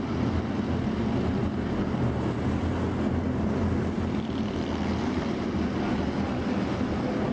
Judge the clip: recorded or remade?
recorded